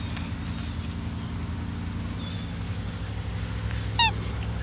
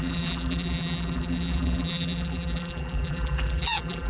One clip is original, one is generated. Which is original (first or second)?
first